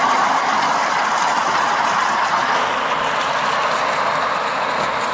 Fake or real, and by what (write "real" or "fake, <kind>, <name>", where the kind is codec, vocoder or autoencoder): real